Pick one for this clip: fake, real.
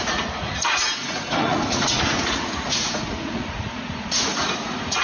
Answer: fake